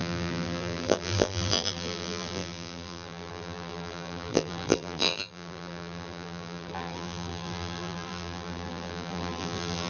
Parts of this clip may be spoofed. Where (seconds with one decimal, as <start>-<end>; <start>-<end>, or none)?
0.0-9.9